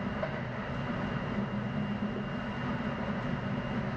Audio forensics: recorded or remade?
recorded